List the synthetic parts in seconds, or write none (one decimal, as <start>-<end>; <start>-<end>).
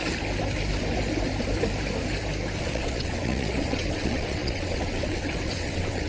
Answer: 2.6-6.1